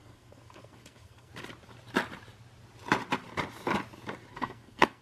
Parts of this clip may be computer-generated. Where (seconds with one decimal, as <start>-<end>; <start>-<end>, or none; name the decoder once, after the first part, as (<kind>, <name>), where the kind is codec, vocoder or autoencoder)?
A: 0.0-1.3 (codec, SNAC); 4.3-5.0